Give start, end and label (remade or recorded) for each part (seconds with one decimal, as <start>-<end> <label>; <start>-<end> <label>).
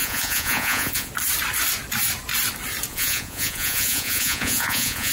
0.0-1.1 remade; 1.1-2.9 recorded; 2.9-5.1 remade